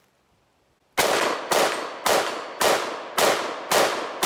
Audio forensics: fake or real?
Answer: real